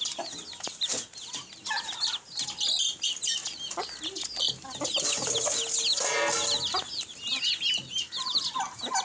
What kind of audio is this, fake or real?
real